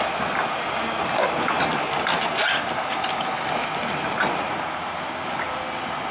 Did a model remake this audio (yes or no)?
no